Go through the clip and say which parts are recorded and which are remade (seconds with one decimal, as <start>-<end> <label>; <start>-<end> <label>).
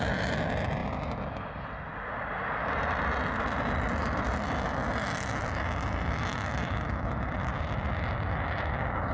0.0-9.1 recorded